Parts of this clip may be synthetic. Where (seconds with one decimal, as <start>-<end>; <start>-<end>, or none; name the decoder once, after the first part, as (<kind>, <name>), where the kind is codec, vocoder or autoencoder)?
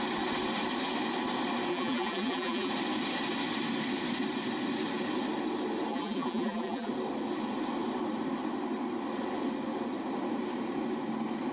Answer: 1.7-2.7 (vocoder, BigVGAN v2); 5.9-6.9